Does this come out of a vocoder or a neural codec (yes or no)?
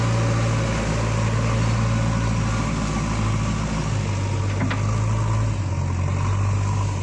no